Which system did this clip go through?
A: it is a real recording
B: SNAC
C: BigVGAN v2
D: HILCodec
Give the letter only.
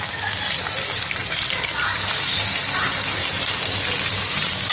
A